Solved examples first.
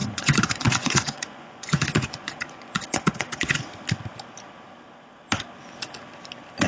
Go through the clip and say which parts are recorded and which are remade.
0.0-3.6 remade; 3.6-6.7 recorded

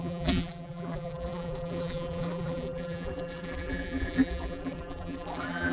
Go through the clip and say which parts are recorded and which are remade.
0.0-5.7 remade

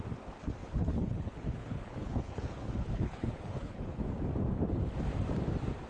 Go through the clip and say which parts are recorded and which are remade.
0.0-0.6 recorded; 0.6-4.1 remade; 4.1-5.9 recorded

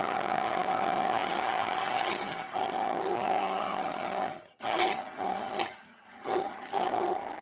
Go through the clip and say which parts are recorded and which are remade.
0.0-7.4 remade

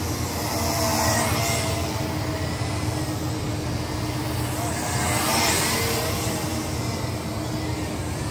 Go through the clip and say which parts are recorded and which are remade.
0.0-8.3 recorded

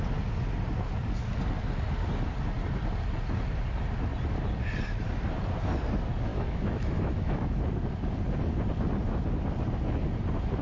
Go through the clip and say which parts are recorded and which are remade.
0.0-6.3 recorded; 6.3-7.6 remade; 7.6-10.6 recorded

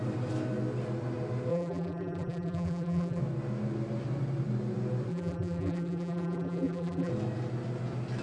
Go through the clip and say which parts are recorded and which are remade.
0.0-1.5 recorded; 1.5-3.2 remade; 3.2-5.1 recorded; 5.1-7.1 remade; 7.1-8.2 recorded

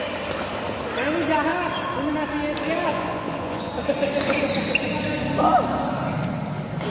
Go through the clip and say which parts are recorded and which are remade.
0.0-2.9 recorded; 2.9-3.7 remade; 3.7-6.9 recorded